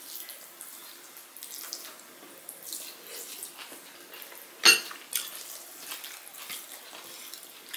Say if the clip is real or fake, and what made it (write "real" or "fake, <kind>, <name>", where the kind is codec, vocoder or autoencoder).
real